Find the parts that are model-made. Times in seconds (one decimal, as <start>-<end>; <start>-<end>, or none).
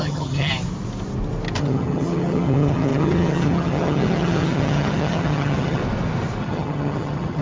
0.0-0.5; 1.6-5.8; 6.4-7.4